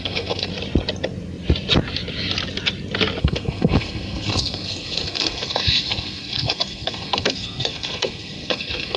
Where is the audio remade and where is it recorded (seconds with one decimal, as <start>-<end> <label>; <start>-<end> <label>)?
0.0-0.5 remade; 0.5-3.2 recorded; 3.2-9.0 remade